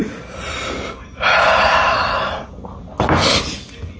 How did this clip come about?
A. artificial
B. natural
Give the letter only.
B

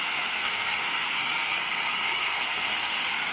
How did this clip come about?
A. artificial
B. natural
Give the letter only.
A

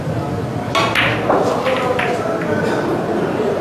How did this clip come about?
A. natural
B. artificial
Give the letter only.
A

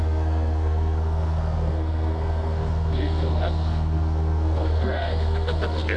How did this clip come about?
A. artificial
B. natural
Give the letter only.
A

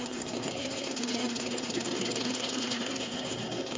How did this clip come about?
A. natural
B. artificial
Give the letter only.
B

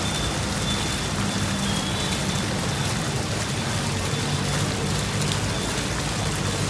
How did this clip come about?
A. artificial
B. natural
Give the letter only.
B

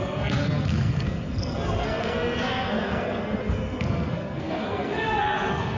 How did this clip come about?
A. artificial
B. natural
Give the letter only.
A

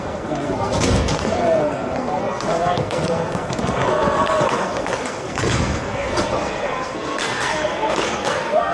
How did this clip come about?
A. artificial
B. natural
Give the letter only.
A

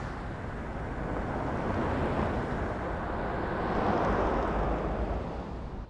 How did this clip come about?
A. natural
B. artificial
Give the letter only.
A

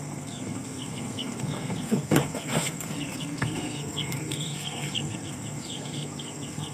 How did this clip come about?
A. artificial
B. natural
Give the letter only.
A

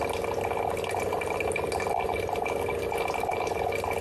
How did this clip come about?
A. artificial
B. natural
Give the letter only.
B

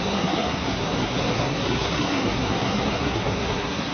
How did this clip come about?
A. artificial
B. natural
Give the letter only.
A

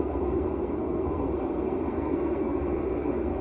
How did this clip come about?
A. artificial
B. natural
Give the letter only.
A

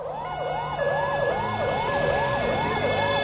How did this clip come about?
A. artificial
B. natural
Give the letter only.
B